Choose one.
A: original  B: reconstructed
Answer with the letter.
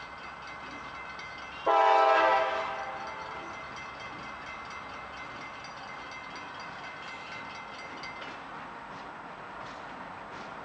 A